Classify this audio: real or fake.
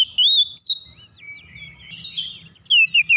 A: real